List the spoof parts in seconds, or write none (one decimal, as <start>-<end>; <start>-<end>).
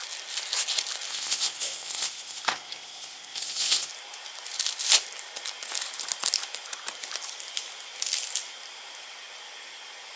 1.1-3.9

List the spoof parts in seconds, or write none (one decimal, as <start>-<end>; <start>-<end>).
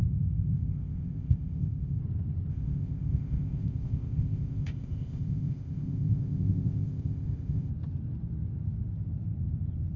0.0-2.0; 2.5-7.7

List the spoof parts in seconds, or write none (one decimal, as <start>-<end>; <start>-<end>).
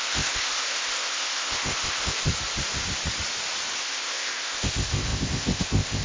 0.0-2.2; 3.8-6.0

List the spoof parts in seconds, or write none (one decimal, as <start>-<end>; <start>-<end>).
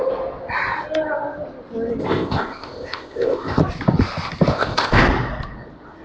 2.0-3.6; 4.5-5.0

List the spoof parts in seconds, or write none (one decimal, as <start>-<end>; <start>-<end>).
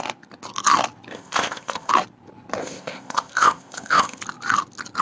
1.1-1.9; 2.6-4.2